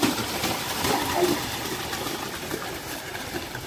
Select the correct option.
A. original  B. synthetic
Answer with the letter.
A